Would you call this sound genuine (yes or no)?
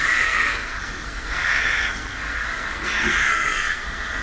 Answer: no